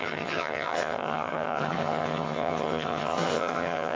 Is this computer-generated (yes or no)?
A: yes